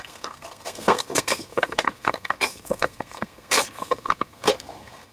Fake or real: fake